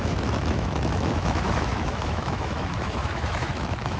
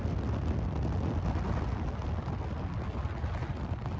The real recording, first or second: second